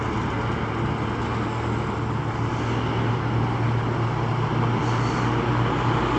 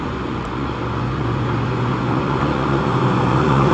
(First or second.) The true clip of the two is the first